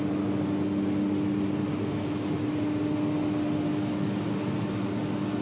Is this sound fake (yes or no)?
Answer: no